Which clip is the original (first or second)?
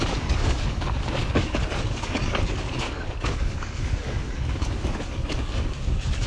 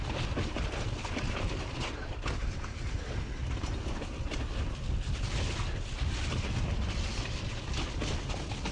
second